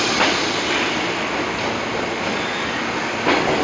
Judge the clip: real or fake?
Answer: real